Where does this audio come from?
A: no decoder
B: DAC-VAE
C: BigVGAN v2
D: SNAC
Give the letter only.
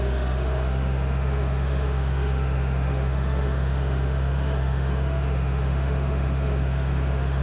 B